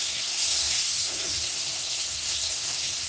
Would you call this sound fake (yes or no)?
yes